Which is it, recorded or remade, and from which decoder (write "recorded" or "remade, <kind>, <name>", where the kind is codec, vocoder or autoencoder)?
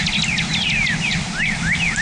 recorded